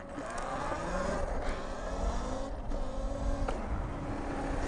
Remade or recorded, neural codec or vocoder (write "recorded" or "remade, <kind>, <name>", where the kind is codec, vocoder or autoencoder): recorded